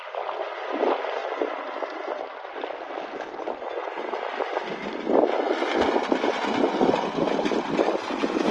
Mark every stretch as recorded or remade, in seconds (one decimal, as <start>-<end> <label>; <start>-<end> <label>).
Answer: 0.0-8.5 recorded